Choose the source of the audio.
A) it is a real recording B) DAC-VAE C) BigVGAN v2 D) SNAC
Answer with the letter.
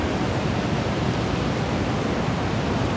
A